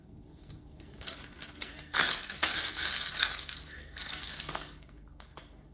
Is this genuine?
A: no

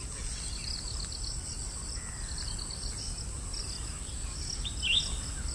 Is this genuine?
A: yes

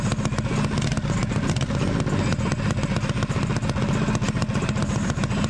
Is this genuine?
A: yes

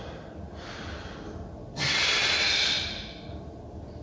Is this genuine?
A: yes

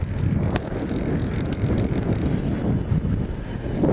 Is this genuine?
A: yes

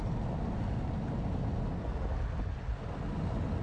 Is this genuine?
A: yes